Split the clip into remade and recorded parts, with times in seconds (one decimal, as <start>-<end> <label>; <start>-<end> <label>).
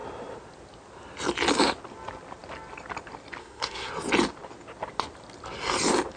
0.0-3.4 recorded; 3.4-3.9 remade; 3.9-6.2 recorded